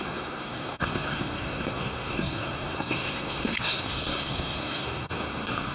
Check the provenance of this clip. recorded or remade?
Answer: remade